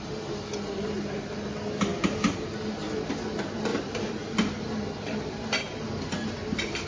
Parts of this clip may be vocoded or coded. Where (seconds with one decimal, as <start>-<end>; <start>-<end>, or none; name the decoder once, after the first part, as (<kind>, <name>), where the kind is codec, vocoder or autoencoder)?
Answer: none